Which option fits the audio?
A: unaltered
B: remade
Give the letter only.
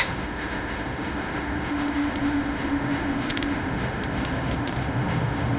B